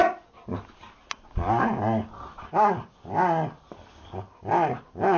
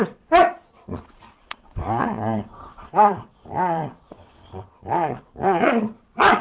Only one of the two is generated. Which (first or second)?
second